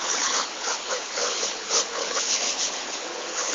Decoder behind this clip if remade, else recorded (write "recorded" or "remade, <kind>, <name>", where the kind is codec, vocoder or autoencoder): remade, codec, HILCodec